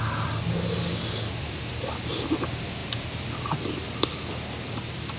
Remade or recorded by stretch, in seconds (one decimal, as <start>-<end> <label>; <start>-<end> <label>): 0.0-5.2 recorded